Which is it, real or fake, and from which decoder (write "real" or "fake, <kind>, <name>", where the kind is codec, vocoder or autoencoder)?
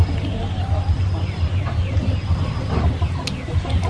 real